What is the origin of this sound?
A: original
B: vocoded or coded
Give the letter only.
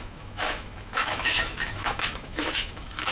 B